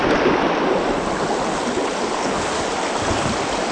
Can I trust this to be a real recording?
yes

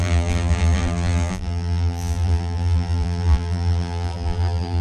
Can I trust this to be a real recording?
no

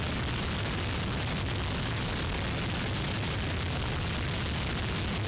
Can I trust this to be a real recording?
yes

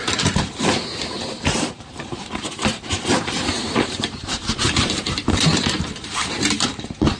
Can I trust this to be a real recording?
no